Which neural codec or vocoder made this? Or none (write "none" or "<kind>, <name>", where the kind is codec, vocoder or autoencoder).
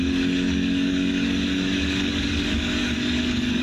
codec, DAC